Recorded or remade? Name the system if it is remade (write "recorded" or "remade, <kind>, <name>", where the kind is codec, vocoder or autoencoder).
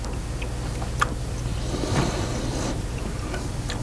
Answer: recorded